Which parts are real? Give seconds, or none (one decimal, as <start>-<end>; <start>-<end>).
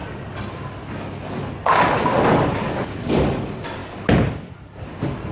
0.0-5.3